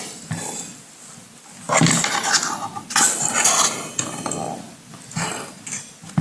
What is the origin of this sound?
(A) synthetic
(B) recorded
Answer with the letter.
B